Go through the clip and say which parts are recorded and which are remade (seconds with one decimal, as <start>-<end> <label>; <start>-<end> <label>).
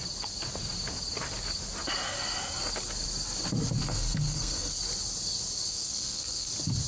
0.0-3.8 recorded; 3.8-4.8 remade; 4.8-5.7 recorded; 5.7-6.5 remade; 6.5-6.9 recorded